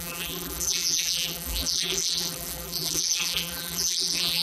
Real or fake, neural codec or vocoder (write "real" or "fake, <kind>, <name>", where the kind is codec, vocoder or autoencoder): fake, vocoder, BigVGAN v2